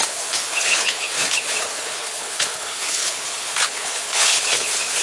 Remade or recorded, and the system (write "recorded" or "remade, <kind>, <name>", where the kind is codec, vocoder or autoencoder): remade, codec, HILCodec